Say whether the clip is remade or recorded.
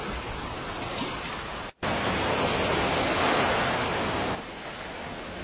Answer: recorded